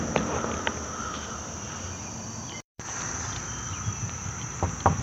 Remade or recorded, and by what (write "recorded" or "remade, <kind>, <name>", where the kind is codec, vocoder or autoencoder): remade, vocoder, BigVGAN v2